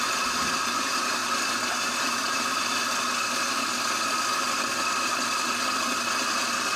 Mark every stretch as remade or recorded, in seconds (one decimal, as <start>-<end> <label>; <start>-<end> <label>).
0.0-6.8 recorded